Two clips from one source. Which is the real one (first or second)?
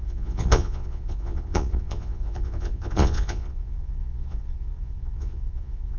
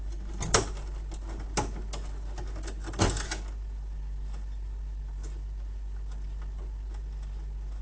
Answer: second